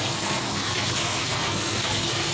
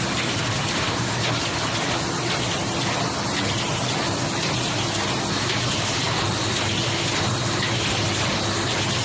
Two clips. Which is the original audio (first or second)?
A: second